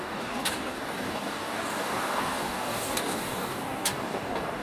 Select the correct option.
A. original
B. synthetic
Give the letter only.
B